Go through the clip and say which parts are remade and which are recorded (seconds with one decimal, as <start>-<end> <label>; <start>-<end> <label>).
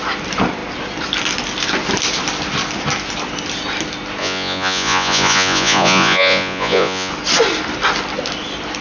0.0-4.2 recorded; 4.2-7.1 remade; 7.1-8.8 recorded